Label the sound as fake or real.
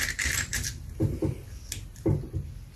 fake